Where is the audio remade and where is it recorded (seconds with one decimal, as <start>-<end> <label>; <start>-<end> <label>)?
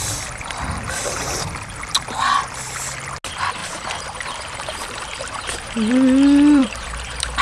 0.0-3.6 recorded; 3.6-5.9 remade; 5.9-6.6 recorded; 6.6-7.4 remade